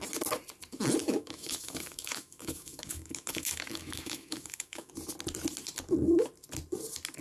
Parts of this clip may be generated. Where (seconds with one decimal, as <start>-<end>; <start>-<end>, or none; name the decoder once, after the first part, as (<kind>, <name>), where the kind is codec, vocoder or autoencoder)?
1.0-4.9 (autoencoder, DAC-VAE)